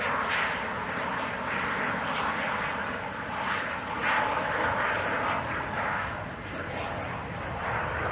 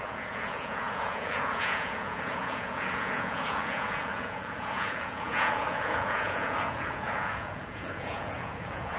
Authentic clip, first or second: first